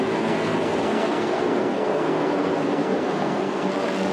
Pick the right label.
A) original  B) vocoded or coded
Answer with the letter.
B